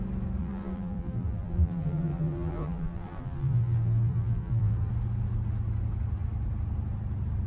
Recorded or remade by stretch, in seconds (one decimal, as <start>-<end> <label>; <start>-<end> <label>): 0.0-0.4 recorded; 0.4-4.9 remade; 4.9-7.5 recorded

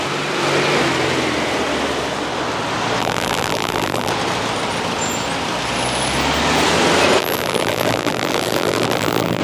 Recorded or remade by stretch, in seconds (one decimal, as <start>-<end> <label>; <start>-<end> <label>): 0.0-3.0 recorded; 3.0-4.1 remade; 4.1-7.2 recorded; 7.2-9.4 remade

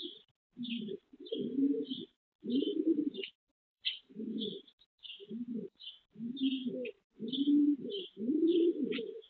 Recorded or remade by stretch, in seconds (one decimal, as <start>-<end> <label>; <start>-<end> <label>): 0.0-6.6 remade; 6.6-7.6 recorded; 7.6-9.3 remade

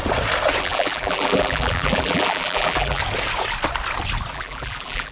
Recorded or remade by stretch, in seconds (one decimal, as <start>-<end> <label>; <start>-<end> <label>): 0.0-0.6 recorded; 0.6-3.0 remade; 3.0-4.3 recorded; 4.3-5.1 remade

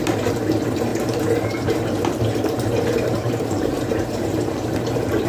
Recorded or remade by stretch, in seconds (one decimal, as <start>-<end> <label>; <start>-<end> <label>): 0.0-5.3 remade

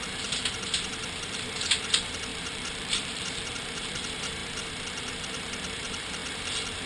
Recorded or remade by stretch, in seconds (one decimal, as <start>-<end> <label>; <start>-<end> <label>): 0.0-2.3 recorded; 2.3-4.0 remade; 4.0-6.9 recorded

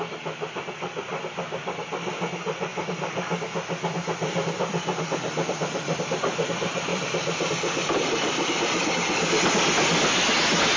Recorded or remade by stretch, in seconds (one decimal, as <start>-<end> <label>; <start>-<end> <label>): 0.0-6.9 recorded; 6.9-9.3 remade; 9.3-10.8 recorded